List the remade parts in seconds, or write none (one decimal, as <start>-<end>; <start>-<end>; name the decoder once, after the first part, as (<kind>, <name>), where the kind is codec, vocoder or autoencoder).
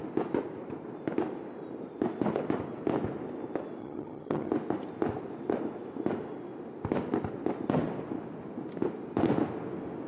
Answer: 3.8-4.5 (vocoder, HiFi-GAN)